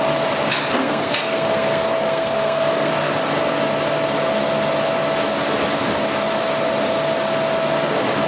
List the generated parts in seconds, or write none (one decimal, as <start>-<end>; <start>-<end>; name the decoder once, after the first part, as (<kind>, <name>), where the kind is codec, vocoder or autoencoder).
0.8-2.9 (codec, SNAC)